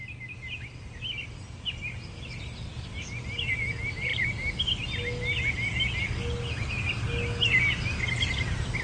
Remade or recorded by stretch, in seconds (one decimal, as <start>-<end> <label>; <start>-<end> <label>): 0.0-8.8 recorded